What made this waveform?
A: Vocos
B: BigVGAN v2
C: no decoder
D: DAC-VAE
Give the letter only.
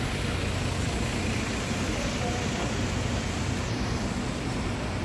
C